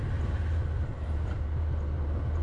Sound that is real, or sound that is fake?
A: real